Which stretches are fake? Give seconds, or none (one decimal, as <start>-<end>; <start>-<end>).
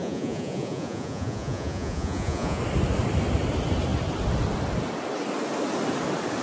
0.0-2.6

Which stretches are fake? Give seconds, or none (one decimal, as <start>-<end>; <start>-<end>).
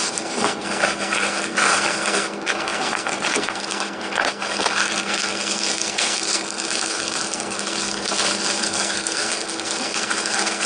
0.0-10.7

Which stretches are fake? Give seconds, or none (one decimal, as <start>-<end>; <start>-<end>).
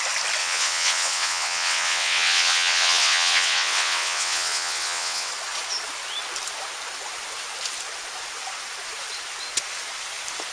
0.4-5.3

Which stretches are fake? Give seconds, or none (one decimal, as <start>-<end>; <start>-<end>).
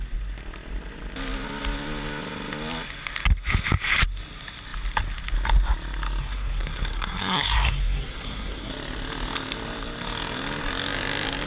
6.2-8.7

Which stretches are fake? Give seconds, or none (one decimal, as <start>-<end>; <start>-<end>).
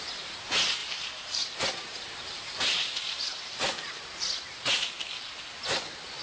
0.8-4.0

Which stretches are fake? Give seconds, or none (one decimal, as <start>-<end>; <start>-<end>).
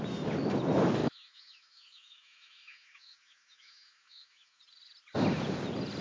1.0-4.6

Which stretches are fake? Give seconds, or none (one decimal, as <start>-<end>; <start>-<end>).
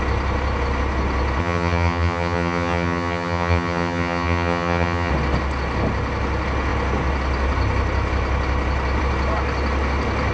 1.4-5.1